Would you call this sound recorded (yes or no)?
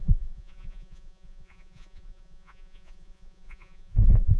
no